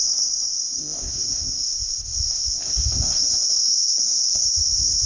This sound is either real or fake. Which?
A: fake